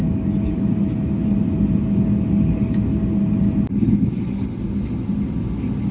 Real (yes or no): yes